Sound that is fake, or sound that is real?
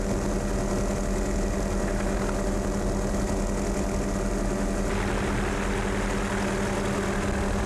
real